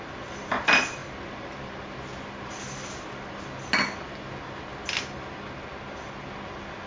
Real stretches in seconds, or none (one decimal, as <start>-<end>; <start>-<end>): 0.0-6.9

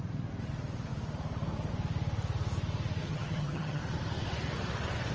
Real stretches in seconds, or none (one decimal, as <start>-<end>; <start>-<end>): 0.0-3.0; 3.8-5.1

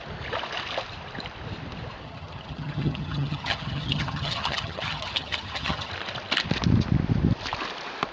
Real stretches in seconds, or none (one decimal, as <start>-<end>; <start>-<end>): 0.0-2.0; 5.9-8.1

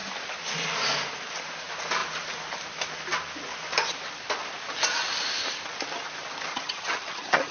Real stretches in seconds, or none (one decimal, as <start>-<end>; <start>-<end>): 0.0-6.5

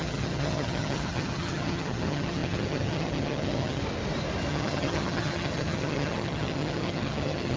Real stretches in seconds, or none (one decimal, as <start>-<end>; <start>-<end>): 3.8-4.5

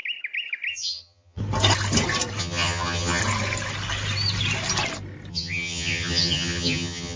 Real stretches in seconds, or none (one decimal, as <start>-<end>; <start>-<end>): 0.0-0.7; 1.4-2.4; 3.2-5.3

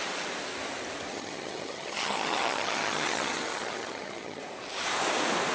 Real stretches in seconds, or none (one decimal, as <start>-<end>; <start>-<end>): 0.0-1.1; 4.4-5.5